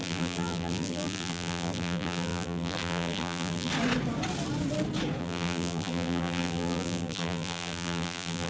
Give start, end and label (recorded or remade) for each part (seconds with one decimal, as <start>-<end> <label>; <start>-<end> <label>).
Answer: 0.0-3.7 remade; 3.7-5.2 recorded; 5.2-8.5 remade